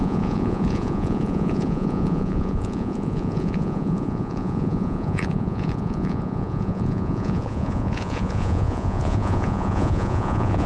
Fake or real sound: fake